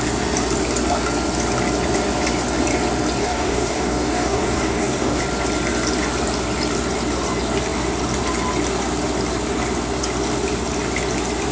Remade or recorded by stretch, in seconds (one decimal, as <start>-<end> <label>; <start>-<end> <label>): 0.0-3.2 recorded; 3.2-5.2 remade; 5.2-11.5 recorded